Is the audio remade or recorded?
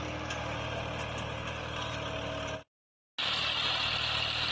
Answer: recorded